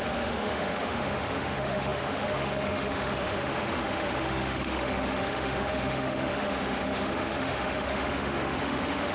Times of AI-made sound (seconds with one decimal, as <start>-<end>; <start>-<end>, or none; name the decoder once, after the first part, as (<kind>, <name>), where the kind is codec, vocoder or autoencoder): 0.0-9.1 (autoencoder, DAC-VAE)